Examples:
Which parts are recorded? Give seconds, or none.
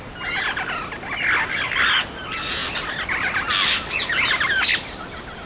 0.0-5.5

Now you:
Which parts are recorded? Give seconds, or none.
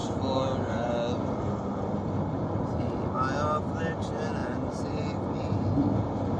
0.0-6.4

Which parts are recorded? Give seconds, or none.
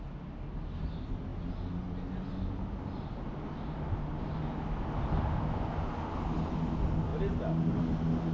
0.0-8.3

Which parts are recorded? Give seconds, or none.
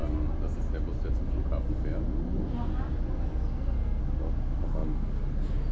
0.0-3.3; 4.0-5.7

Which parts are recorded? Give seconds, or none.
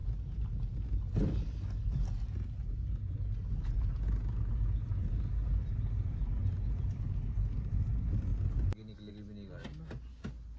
0.0-10.6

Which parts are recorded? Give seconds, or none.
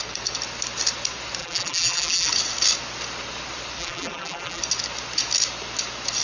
0.0-1.4; 2.3-3.8; 4.6-6.2